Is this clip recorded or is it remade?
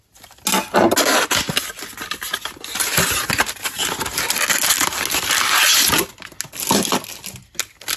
recorded